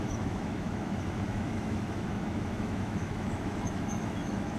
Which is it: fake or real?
fake